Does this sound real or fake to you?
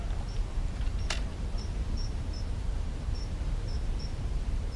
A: fake